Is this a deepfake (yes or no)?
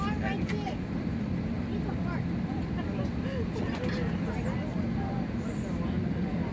no